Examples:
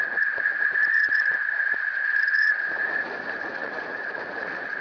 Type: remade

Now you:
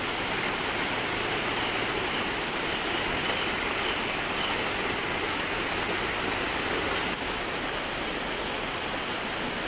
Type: recorded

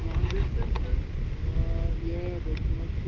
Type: recorded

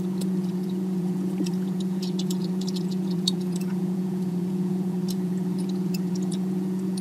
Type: remade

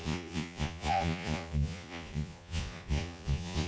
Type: remade